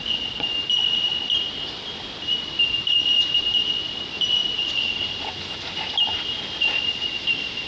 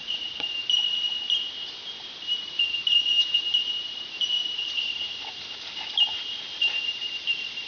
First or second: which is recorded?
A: first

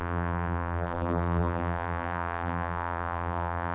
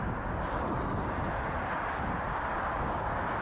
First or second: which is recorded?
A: second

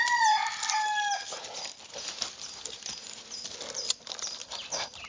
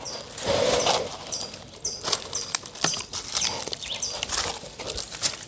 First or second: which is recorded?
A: first